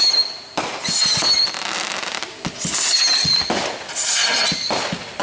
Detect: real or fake real